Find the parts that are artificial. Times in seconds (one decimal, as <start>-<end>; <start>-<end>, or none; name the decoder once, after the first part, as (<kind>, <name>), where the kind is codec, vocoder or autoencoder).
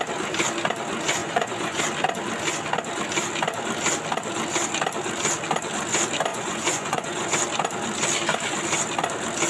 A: 1.2-1.8 (vocoder, Vocos); 6.3-7.3